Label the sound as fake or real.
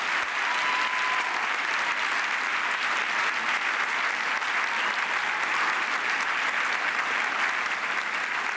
real